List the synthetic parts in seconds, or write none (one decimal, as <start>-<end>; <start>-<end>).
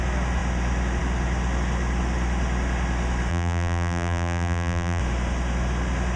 3.3-5.0